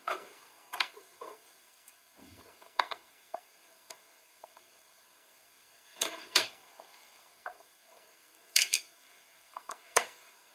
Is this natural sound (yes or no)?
no